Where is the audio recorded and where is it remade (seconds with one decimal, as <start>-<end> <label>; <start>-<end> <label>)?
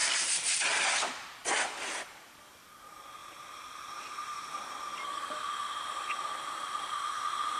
0.0-0.6 remade; 0.6-1.4 recorded; 1.4-2.6 remade; 2.6-3.2 recorded; 3.2-7.6 remade